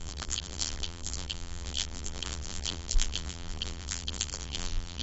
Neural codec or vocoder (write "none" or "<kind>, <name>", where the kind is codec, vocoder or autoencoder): vocoder, BigVGAN v2